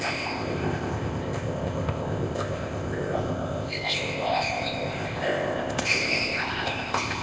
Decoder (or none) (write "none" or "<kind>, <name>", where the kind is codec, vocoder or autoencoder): codec, ZipCodec